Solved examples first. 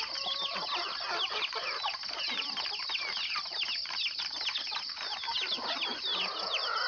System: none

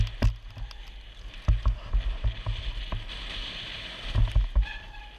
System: none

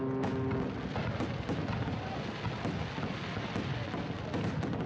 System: none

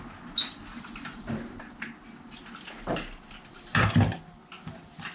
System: none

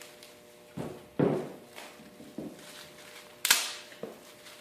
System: none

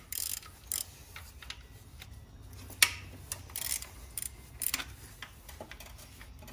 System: none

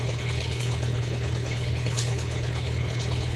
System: codec, HILCodec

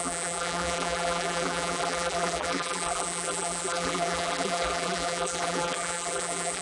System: vocoder, BigVGAN v2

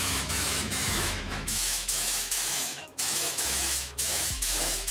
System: autoencoder, DAC-VAE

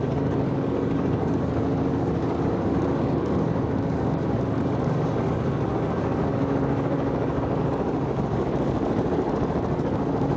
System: codec, DAC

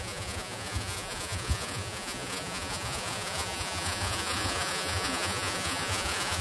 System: vocoder, Vocos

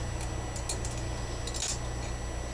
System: none